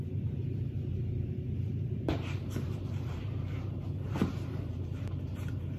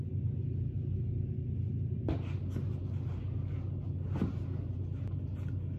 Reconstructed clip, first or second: first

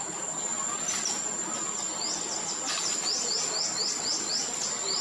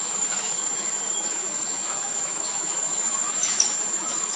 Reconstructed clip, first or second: second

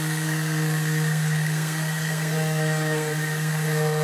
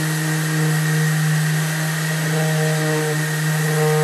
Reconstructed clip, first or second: first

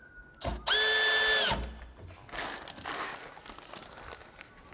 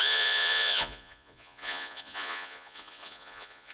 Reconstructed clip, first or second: second